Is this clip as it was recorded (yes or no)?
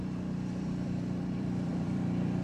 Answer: no